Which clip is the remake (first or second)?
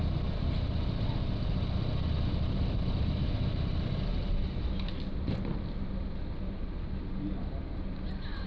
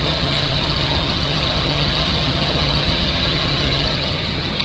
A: second